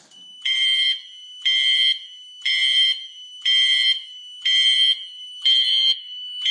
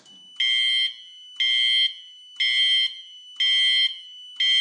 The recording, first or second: second